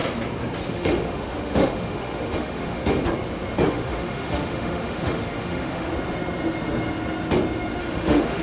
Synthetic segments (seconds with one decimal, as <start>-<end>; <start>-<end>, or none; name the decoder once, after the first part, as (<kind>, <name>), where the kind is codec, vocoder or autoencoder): 0.7-3.0 (autoencoder, DAC-VAE); 3.7-5.9; 7.8-8.4